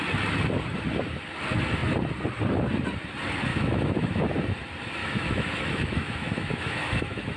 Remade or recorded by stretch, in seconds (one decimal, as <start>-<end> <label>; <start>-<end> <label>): 0.0-3.5 recorded; 3.5-4.2 remade; 4.2-5.0 recorded; 5.0-7.4 remade